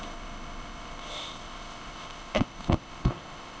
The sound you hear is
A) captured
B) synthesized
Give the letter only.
B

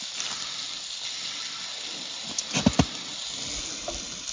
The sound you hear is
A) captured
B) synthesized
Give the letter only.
A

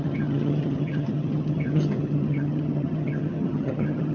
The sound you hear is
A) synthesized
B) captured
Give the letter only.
A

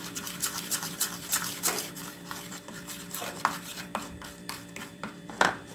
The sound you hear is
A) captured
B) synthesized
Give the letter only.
B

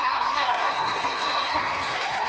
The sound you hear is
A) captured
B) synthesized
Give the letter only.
B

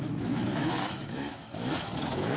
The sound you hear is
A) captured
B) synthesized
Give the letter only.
B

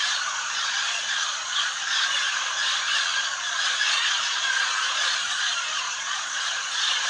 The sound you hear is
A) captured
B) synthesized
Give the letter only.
B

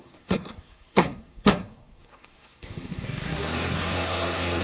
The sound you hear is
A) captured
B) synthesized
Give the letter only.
B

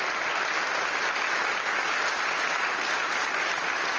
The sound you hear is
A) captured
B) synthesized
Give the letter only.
A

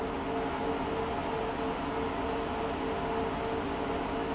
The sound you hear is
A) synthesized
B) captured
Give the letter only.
B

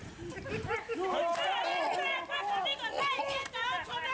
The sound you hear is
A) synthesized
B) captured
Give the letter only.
B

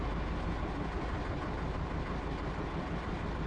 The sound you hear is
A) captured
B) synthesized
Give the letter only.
A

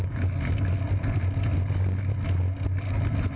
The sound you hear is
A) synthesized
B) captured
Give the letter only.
B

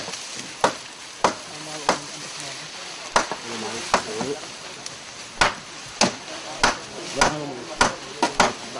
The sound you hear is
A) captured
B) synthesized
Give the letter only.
A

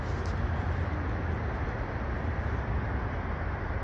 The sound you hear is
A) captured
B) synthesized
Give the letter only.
A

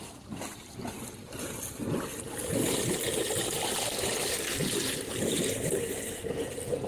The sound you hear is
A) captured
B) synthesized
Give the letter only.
A